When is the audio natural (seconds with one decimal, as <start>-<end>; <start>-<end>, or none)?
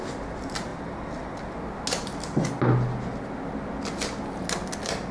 0.0-5.1